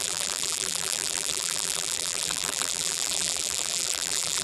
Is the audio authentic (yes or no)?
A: no